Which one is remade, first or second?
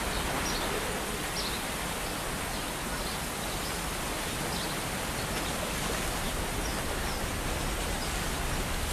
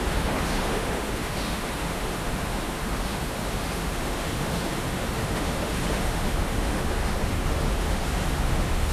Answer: second